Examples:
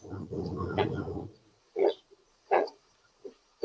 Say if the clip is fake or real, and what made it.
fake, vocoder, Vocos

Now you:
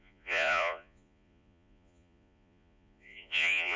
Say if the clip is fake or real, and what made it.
fake, vocoder, Vocos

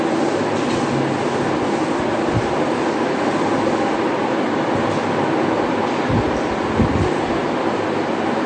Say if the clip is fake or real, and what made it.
real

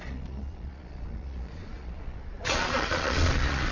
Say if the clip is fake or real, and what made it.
fake, vocoder, Vocos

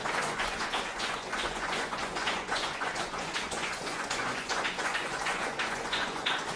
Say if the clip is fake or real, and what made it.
fake, vocoder, Vocos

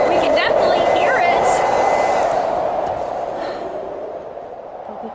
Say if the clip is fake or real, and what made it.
real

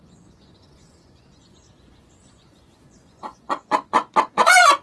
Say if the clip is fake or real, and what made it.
fake, vocoder, Vocos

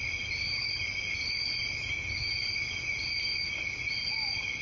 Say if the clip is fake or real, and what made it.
real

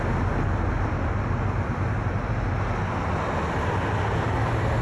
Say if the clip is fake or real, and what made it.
real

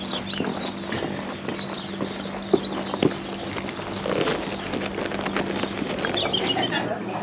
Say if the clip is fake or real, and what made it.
real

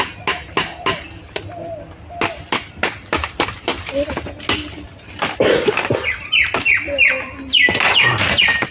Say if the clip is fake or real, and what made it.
real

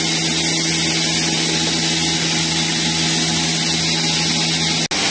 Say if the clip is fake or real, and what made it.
real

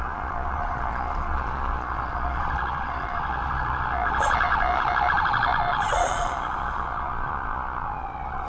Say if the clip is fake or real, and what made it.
fake, vocoder, Vocos